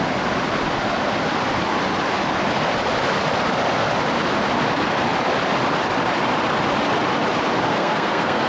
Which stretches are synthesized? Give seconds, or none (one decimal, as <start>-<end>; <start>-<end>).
7.7-8.5